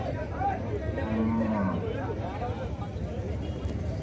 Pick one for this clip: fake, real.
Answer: fake